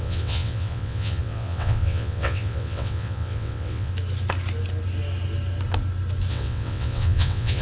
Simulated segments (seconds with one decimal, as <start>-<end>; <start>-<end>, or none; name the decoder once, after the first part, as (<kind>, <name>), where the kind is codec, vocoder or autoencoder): 0.0-3.9 (vocoder, WaveNeXt); 6.3-7.6